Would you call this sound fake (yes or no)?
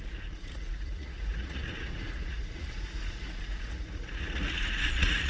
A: yes